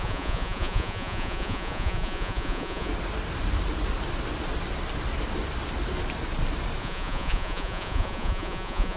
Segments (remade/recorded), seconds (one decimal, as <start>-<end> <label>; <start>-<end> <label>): 0.0-2.9 remade; 2.9-6.8 recorded; 6.8-9.0 remade